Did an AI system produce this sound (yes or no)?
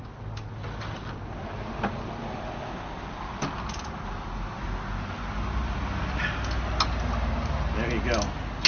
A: no